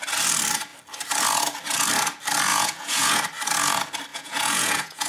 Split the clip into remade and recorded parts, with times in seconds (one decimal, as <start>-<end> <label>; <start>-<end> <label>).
0.0-2.5 recorded; 2.5-3.2 remade; 3.2-4.1 recorded; 4.1-5.1 remade